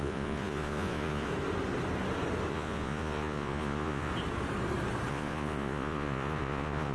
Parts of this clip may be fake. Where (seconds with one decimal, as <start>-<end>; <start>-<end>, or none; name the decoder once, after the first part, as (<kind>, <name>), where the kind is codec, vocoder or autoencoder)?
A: 0.0-1.3 (vocoder, Vocos); 2.5-4.1; 5.1-6.9